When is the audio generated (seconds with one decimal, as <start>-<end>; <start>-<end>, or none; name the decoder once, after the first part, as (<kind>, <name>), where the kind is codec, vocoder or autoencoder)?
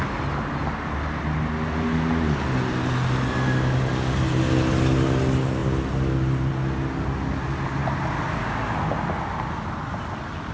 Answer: none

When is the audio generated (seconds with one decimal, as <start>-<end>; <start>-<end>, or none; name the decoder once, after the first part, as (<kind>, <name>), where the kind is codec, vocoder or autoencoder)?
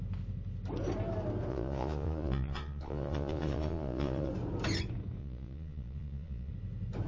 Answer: 1.5-4.3 (vocoder, Vocos); 5.2-6.5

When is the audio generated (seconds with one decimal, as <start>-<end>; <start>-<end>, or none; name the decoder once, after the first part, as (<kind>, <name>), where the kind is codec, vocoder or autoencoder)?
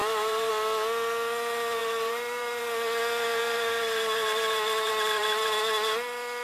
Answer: 0.0-0.5 (vocoder, BigVGAN v2); 1.8-2.6; 3.4-5.6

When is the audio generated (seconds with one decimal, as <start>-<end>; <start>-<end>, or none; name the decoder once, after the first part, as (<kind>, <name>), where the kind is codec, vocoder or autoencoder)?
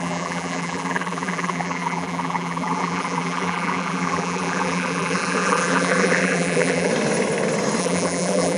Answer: 0.0-6.9 (vocoder, BigVGAN v2); 7.8-8.6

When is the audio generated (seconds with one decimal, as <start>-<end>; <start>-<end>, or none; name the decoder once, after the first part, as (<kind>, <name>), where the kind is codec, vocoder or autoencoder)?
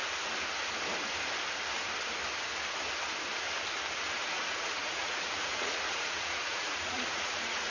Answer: 4.2-7.7 (vocoder, Vocos)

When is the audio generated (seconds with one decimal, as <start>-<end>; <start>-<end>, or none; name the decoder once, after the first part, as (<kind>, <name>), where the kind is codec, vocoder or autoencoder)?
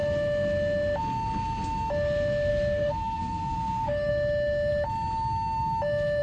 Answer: 2.5-4.1 (codec, SNAC)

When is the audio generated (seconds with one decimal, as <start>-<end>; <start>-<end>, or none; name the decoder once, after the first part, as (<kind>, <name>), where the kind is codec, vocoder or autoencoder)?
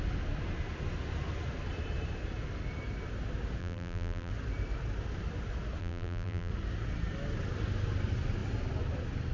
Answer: 3.6-4.3 (vocoder, BigVGAN v2); 5.8-6.5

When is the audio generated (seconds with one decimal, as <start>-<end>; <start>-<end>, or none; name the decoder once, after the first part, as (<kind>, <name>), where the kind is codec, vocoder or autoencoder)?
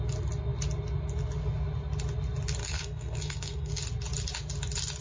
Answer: 2.6-3.7 (codec, SNAC)